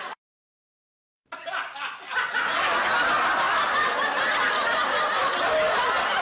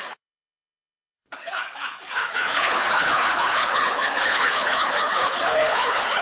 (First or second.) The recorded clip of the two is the first